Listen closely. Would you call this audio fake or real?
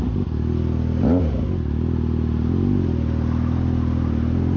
real